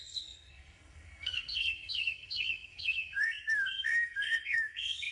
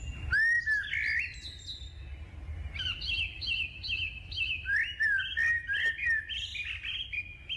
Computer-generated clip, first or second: first